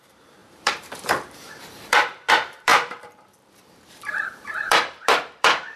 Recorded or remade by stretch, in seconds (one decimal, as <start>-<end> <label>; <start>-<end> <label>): 0.0-5.8 remade

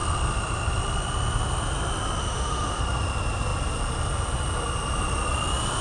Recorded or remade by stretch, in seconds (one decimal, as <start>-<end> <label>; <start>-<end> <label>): 0.0-2.2 recorded; 2.2-2.8 remade; 2.8-5.8 recorded

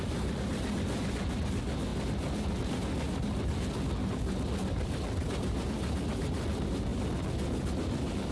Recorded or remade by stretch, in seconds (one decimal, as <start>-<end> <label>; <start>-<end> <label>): 0.0-8.3 recorded

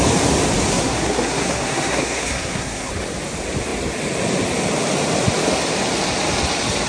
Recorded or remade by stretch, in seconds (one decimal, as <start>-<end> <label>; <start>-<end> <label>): 0.0-0.7 recorded; 0.7-2.9 remade; 2.9-6.9 recorded

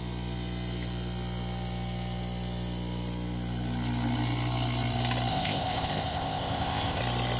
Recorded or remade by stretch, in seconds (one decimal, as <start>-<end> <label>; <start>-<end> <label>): 0.0-5.3 recorded; 5.3-7.0 remade; 7.0-7.4 recorded

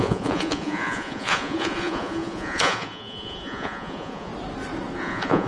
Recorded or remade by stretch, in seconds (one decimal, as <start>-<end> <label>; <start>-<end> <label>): 0.0-4.3 remade; 4.3-5.0 recorded; 5.0-5.5 remade

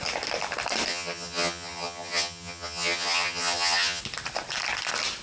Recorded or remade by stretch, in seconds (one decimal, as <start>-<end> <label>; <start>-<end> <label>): 0.0-0.9 recorded; 0.9-4.0 remade; 4.0-5.2 recorded